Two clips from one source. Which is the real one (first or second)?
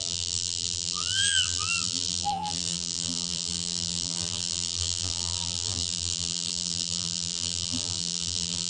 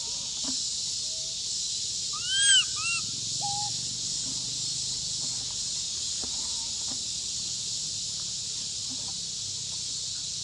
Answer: second